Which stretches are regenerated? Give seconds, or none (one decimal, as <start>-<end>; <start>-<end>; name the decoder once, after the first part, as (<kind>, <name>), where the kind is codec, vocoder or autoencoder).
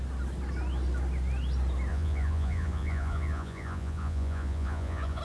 1.9-5.2 (vocoder, Vocos)